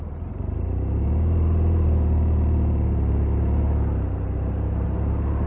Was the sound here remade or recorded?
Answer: remade